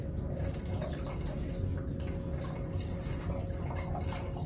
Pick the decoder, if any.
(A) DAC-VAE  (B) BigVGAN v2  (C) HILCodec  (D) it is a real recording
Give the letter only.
D